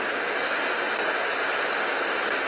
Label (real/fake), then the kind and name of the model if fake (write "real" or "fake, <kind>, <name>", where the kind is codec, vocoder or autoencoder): real